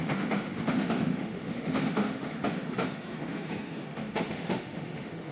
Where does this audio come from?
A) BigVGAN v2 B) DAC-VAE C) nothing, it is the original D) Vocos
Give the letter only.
B